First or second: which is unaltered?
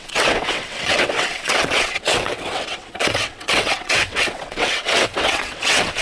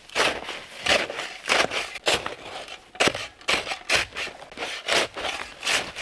second